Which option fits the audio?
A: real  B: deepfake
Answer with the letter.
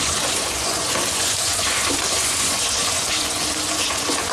B